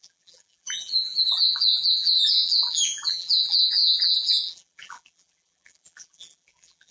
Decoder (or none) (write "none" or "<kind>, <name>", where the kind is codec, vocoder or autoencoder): vocoder, BigVGAN v2